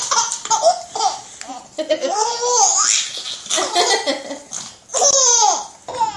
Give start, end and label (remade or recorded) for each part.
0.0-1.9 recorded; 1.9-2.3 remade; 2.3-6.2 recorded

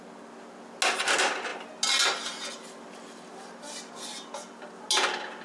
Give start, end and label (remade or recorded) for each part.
0.0-5.4 recorded

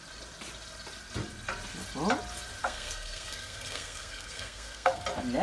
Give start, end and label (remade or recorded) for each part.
0.0-2.6 recorded; 2.6-5.0 remade; 5.0-5.4 recorded

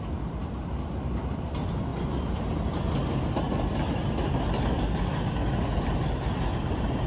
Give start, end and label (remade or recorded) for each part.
0.0-7.1 recorded

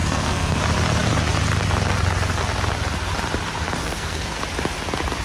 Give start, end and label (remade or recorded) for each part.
0.0-0.6 remade; 0.6-3.8 recorded; 3.8-4.4 remade; 4.4-5.2 recorded

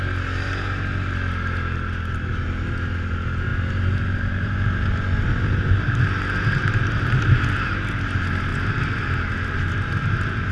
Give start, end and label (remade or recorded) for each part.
0.0-10.5 recorded

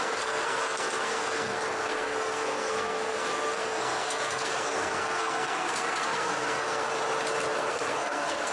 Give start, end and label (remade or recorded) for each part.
0.0-6.9 remade; 6.9-7.5 recorded; 7.5-8.5 remade

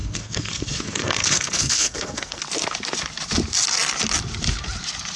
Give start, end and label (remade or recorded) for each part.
0.0-2.4 remade; 2.4-5.2 recorded